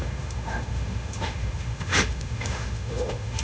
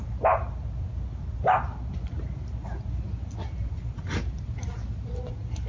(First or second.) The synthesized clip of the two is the first